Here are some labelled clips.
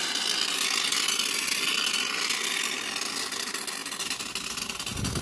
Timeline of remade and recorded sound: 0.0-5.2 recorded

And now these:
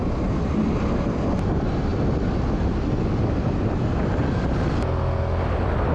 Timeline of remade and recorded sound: 0.0-5.9 recorded

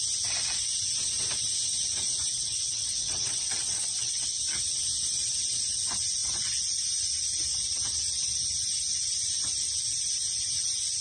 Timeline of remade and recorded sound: 0.0-2.3 recorded; 2.3-4.4 remade; 4.4-11.0 recorded